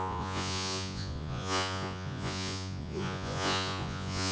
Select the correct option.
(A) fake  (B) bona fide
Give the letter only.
A